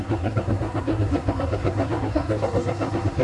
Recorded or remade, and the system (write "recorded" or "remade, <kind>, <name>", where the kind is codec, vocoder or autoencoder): remade, codec, SNAC